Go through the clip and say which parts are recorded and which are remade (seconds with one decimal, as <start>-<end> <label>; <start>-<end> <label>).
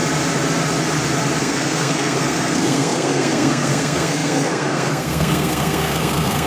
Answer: 0.0-1.4 recorded; 1.4-6.5 remade